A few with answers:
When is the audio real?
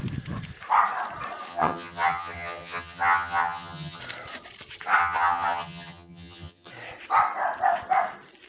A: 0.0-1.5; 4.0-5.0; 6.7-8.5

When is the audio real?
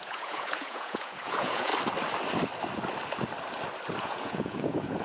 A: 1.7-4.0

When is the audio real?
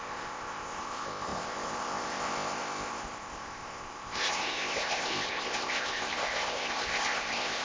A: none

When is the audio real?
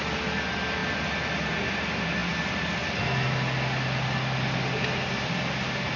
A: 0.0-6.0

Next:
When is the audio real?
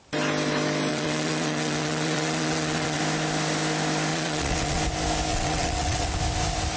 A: 0.0-0.9; 3.0-4.1; 4.8-5.3; 6.2-6.8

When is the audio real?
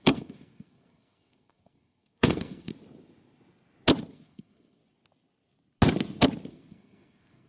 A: 2.7-4.1; 4.8-6.5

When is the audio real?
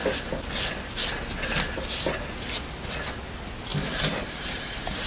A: 0.0-3.7